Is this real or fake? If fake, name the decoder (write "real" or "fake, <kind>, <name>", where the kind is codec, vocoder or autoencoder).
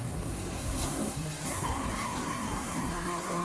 fake, codec, SNAC